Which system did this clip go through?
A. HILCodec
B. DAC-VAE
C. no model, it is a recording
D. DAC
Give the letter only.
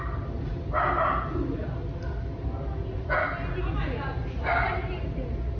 C